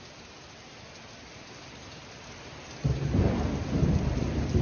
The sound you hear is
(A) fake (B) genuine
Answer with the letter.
B